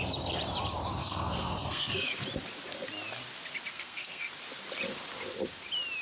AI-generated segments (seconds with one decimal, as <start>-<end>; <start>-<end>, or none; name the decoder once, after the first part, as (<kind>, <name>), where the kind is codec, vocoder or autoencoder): 1.0-2.1 (codec, SNAC); 3.7-4.3